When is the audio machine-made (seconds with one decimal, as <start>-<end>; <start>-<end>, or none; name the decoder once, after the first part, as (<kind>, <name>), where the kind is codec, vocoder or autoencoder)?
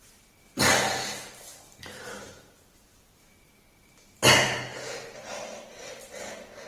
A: none